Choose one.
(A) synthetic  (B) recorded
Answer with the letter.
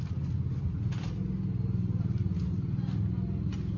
B